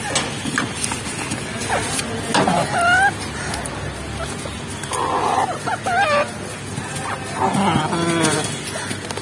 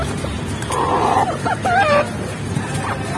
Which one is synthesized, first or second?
second